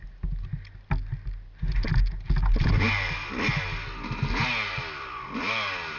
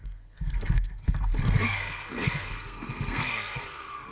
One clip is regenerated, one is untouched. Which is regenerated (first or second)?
second